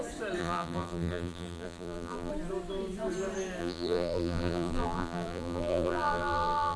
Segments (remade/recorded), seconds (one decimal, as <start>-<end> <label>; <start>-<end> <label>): 0.0-0.4 recorded; 0.4-2.3 remade; 2.3-3.6 recorded; 3.6-6.8 remade